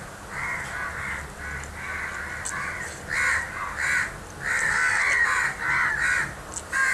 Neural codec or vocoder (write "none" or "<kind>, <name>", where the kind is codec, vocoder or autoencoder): none